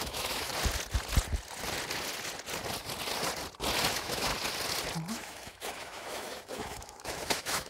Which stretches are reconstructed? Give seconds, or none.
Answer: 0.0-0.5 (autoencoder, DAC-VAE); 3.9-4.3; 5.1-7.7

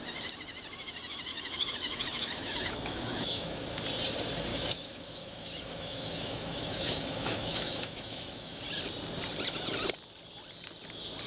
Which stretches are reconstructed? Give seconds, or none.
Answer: 1.3-3.6 (autoencoder, DAC-VAE); 4.5-8.6

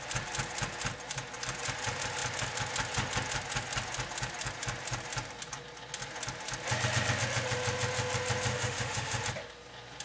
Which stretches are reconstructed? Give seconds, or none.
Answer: 8.5-9.2 (autoencoder, DAC-VAE)

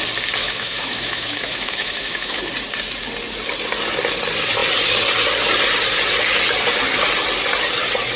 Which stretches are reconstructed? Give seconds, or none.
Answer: 0.4-2.4 (autoencoder, DAC-VAE)

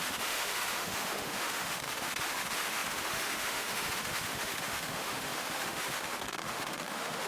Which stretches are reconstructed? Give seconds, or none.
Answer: 0.0-7.3 (autoencoder, DAC-VAE)

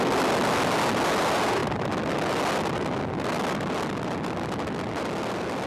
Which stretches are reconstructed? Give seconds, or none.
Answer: none

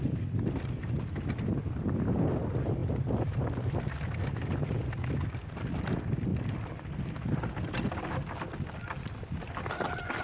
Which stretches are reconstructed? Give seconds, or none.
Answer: none